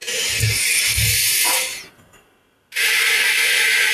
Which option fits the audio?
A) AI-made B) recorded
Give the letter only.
B